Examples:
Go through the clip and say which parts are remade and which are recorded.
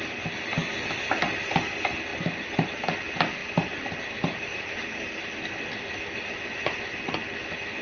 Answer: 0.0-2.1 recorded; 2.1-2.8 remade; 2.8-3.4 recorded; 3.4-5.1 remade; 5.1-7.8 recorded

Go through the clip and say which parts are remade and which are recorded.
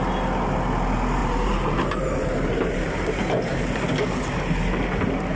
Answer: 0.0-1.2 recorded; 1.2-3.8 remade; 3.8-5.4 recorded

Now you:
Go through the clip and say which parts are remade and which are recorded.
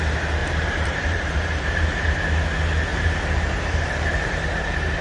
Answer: 0.0-0.4 recorded; 0.4-2.1 remade; 2.1-2.9 recorded; 2.9-4.5 remade; 4.5-5.0 recorded